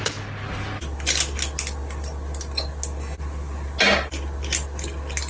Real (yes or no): yes